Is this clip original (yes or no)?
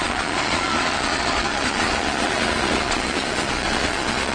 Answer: no